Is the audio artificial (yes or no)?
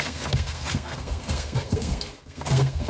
yes